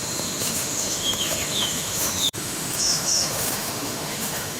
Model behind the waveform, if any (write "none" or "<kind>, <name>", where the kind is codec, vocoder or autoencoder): autoencoder, DAC-VAE